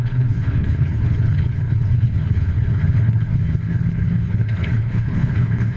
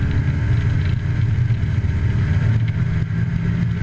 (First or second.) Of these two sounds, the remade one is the first